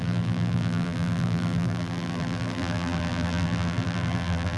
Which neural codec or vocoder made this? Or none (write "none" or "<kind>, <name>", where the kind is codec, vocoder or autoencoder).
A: vocoder, BigVGAN v2